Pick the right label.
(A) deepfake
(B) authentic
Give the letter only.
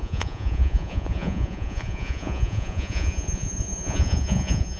A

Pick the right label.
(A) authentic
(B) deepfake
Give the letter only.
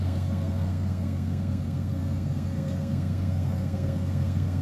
B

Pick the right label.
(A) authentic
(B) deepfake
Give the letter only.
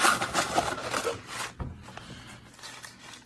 A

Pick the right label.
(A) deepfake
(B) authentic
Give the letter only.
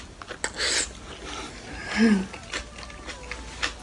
B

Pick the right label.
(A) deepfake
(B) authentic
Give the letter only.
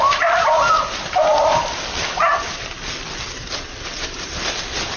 B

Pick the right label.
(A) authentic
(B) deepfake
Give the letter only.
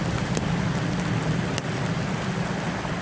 A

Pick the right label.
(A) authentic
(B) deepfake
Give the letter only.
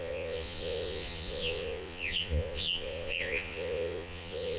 B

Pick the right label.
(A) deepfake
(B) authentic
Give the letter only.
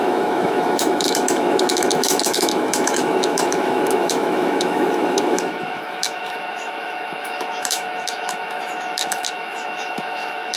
A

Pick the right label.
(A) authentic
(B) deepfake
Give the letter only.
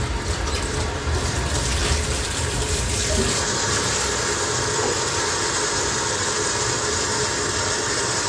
B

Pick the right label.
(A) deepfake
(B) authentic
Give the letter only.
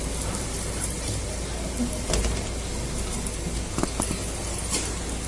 B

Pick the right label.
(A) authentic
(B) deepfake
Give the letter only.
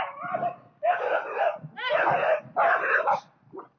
A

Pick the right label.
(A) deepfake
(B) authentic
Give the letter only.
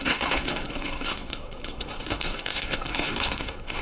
A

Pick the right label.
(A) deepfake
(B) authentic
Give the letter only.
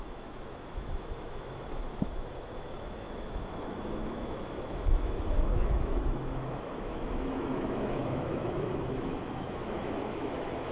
A